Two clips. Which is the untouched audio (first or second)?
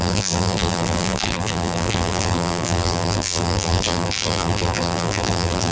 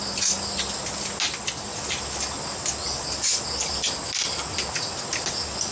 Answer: second